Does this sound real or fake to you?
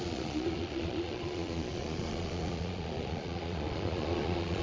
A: fake